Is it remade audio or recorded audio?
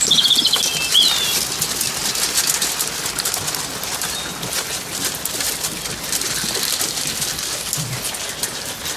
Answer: recorded